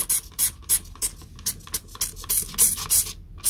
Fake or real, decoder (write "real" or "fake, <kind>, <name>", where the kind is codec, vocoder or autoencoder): real